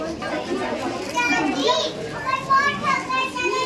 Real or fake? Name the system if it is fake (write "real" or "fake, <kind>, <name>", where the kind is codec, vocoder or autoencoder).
real